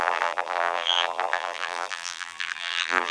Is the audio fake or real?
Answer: fake